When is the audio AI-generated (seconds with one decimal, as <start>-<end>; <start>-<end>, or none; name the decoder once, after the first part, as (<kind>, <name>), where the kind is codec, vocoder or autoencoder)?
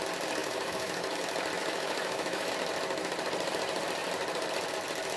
0.4-1.2 (autoencoder, DAC-VAE); 1.6-2.5